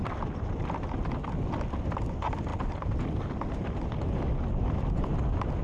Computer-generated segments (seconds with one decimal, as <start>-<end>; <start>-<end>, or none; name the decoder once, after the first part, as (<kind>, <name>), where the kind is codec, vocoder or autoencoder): none